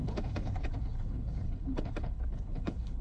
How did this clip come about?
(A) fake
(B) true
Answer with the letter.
A